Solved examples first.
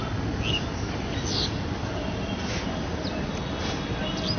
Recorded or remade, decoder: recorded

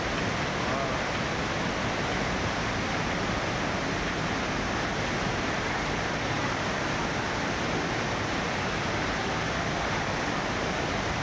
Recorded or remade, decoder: recorded